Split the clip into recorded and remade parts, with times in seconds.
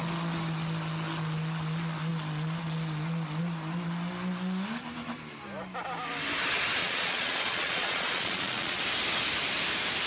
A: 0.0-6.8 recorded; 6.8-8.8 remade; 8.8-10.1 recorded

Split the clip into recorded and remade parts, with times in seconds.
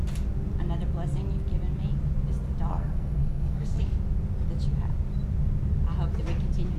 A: 0.0-2.7 recorded; 2.7-3.8 remade; 3.8-6.8 recorded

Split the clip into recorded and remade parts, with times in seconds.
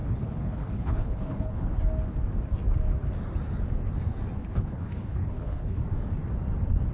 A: 0.0-1.8 remade; 1.8-4.4 recorded; 4.4-5.8 remade; 5.8-6.9 recorded